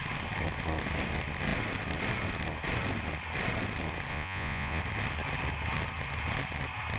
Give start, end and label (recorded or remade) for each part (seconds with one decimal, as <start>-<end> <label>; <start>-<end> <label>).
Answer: 0.0-4.1 recorded; 4.1-4.8 remade; 4.8-7.0 recorded